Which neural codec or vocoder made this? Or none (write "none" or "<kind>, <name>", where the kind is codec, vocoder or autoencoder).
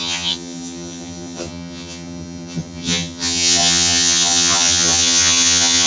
vocoder, HiFi-GAN